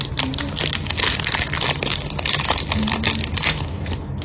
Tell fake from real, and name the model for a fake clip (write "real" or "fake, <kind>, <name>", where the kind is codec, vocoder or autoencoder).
real